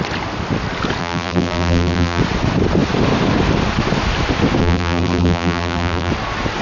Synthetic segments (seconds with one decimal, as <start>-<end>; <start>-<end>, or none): 1.0-2.2; 4.6-6.1

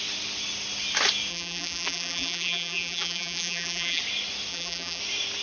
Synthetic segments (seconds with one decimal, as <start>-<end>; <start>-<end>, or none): 1.3-4.0; 4.5-5.0

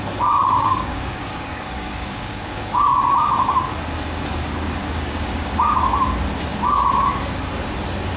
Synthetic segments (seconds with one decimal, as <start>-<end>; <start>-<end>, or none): 0.4-3.0; 4.8-5.8

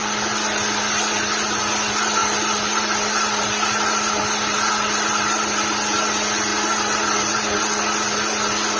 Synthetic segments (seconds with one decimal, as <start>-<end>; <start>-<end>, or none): none

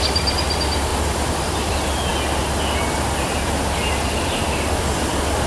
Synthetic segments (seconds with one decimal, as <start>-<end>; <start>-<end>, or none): 0.9-1.7

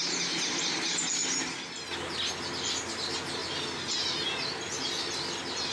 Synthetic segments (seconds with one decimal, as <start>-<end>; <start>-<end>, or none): none